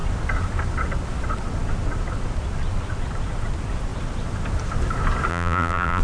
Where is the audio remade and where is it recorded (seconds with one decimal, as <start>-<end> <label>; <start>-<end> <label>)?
0.0-5.3 recorded; 5.3-6.0 remade